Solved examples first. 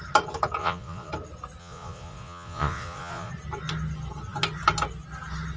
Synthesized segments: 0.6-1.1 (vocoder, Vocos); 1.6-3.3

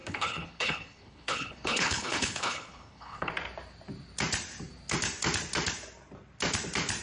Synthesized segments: 0.0-3.3 (codec, HILCodec)

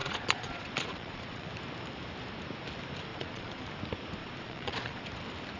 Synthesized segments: 0.0-1.5 (vocoder, Vocos); 3.1-3.7; 4.2-5.0

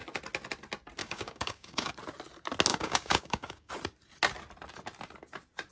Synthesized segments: 1.0-1.9 (codec, DAC); 2.7-3.7

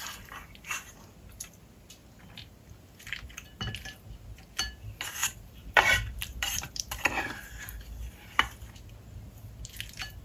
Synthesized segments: 5.2-7.5 (vocoder, BigVGAN v2)

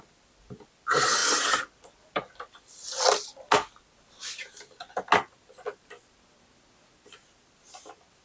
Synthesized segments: none

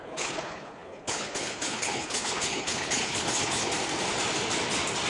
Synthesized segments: 0.0-3.7 (codec, HILCodec)